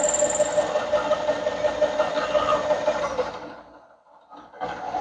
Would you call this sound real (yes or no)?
yes